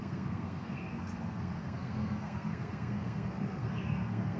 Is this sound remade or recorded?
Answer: remade